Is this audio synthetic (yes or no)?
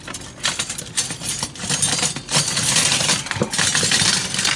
no